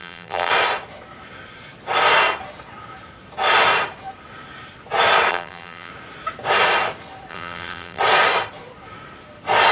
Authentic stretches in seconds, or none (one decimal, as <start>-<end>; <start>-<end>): 0.5-5.3; 5.9-7.3; 8.0-9.7